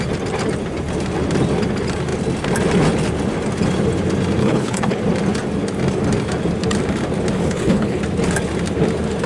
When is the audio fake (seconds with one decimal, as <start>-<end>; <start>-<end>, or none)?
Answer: 4.4-5.0; 7.4-8.0